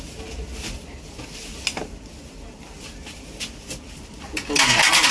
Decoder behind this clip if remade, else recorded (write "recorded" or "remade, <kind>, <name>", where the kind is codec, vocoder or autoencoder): recorded